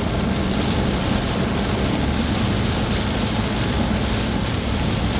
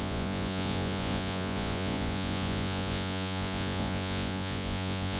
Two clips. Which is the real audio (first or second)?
first